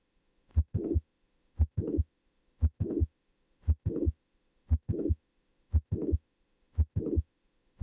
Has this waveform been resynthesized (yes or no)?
yes